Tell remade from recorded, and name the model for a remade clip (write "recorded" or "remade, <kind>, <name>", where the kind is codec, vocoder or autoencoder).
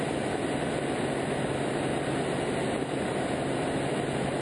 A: recorded